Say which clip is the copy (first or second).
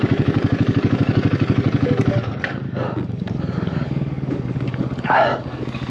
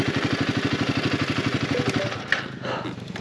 first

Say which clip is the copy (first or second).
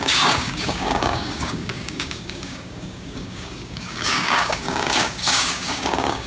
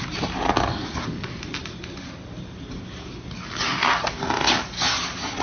first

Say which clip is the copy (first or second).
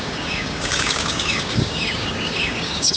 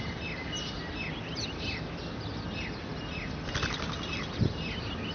first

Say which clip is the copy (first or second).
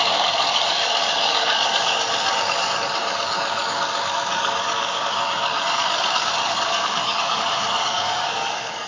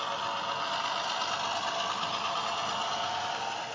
first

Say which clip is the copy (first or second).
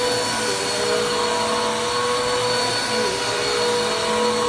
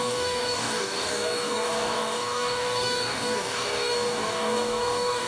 second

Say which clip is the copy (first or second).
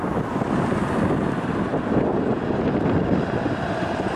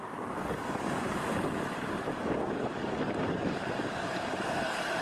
second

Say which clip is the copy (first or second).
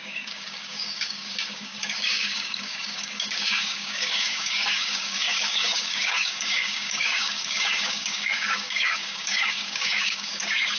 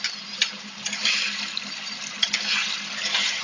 first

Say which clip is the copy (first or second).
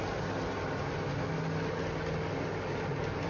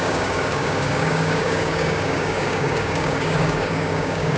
second